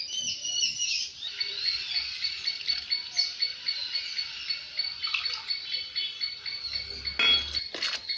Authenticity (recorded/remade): recorded